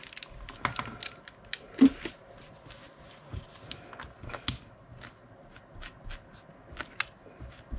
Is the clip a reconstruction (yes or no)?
no